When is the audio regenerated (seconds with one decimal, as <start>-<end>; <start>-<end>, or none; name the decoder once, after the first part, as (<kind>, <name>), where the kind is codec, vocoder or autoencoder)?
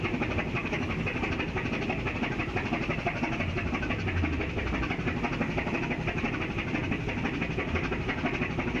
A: 0.6-1.3 (codec, DAC)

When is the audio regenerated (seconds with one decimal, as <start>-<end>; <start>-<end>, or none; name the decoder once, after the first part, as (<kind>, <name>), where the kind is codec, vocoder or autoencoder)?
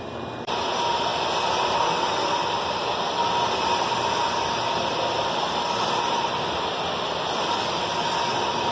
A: 0.0-1.1 (vocoder, BigVGAN v2); 1.7-8.7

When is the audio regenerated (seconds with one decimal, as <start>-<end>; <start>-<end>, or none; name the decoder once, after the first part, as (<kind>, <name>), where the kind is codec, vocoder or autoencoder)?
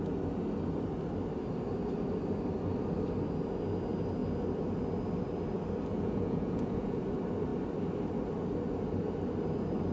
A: 5.9-7.0 (vocoder, Vocos)